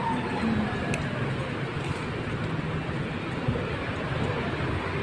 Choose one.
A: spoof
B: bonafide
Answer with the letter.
B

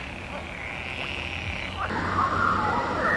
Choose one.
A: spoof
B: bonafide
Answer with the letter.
B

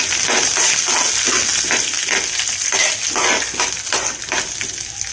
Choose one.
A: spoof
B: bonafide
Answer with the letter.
B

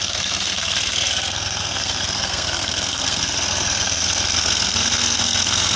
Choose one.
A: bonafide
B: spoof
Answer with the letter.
B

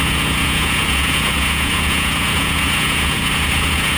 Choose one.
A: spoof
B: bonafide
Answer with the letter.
A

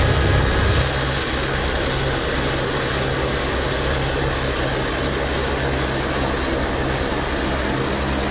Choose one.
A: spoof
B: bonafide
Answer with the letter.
B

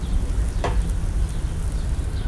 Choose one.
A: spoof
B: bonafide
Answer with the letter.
B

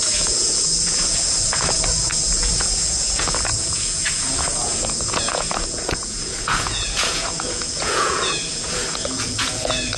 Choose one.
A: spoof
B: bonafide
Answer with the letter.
A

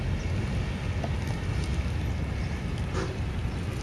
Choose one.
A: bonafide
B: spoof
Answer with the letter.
A